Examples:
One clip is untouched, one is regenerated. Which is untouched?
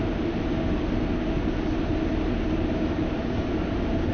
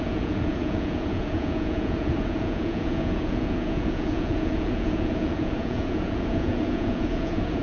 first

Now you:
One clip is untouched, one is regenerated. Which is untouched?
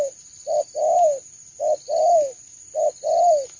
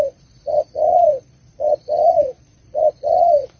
first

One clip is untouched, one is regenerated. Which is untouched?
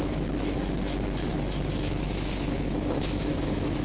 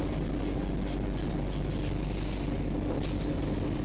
second